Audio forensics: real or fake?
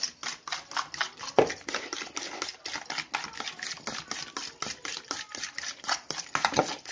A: real